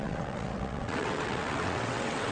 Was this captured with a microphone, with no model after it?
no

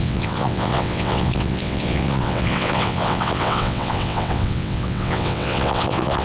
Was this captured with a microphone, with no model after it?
no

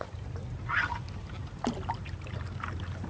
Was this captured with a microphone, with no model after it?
yes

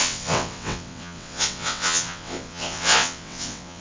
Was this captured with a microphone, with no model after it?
no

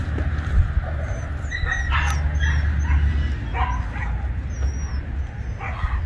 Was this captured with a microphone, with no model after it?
yes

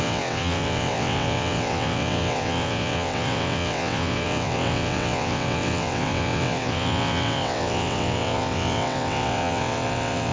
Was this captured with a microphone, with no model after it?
no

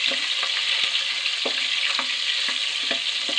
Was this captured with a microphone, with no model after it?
yes